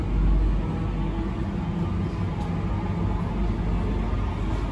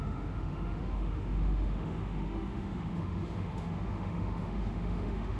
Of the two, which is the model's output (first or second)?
second